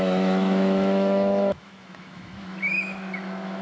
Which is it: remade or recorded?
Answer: remade